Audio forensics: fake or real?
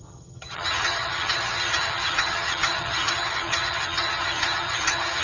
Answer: fake